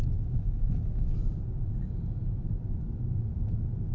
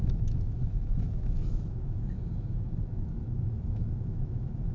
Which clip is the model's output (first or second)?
second